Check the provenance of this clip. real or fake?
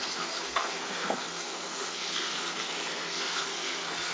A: fake